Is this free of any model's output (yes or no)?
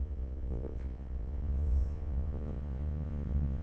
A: no